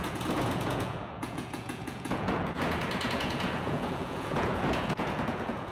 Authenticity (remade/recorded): remade